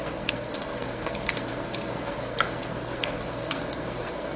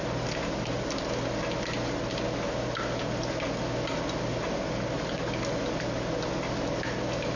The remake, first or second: first